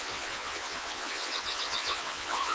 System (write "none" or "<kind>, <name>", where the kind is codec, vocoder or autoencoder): vocoder, WaveNeXt